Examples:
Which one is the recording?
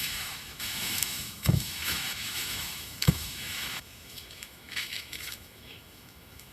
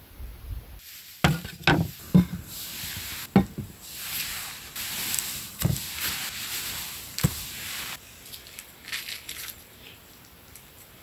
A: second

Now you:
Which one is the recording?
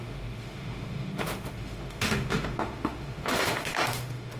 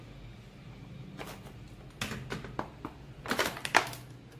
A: second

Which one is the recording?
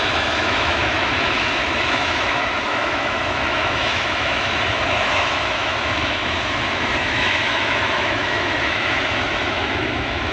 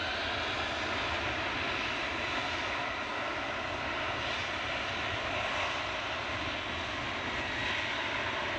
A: second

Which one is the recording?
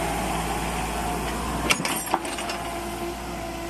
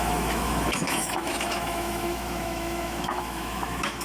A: first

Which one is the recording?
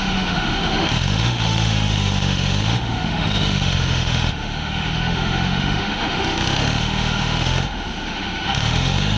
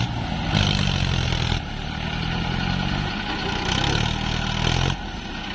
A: second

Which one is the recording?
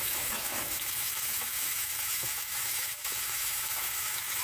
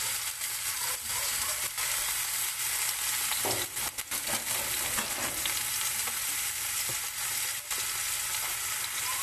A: second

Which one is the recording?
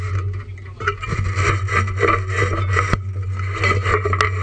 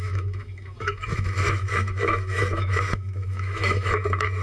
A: first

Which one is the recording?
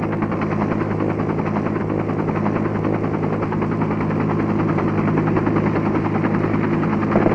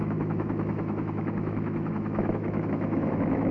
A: first